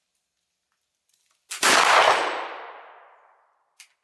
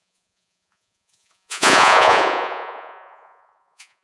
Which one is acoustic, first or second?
first